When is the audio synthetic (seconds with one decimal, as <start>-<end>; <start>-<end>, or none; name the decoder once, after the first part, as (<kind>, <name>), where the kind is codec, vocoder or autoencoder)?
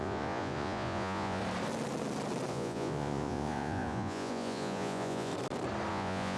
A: 0.0-1.4 (vocoder, Vocos); 2.5-5.3; 5.9-6.4